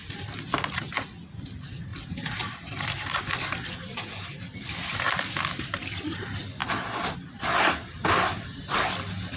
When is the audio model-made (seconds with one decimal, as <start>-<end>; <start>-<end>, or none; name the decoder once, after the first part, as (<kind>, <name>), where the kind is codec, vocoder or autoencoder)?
none